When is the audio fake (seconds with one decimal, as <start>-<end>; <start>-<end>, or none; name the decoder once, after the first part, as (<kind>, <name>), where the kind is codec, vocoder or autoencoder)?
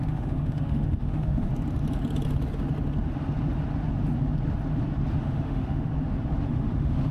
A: 0.0-1.5 (autoencoder, DAC-VAE); 5.2-5.9; 6.5-7.1